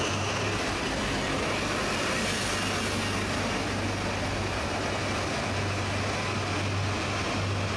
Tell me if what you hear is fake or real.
real